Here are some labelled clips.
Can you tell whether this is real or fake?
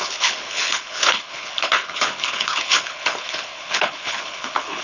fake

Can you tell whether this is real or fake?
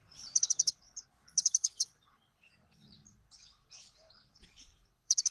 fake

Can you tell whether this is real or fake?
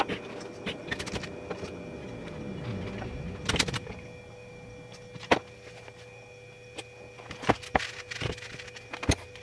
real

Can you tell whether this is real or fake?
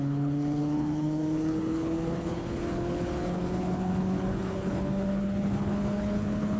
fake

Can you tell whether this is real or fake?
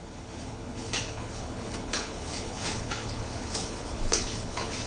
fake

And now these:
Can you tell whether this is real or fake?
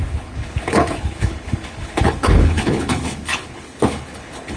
fake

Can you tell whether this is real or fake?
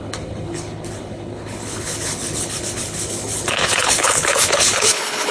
fake